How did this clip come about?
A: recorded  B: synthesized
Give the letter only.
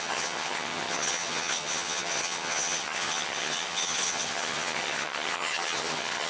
B